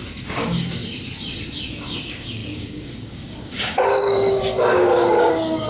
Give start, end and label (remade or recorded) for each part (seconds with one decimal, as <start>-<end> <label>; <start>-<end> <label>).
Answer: 0.0-0.8 remade; 0.8-1.7 recorded; 1.7-5.7 remade